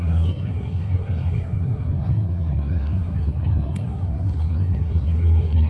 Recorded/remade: remade